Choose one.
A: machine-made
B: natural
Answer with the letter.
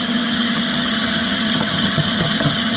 A